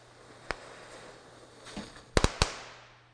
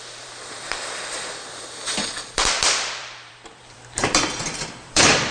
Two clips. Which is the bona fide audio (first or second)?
first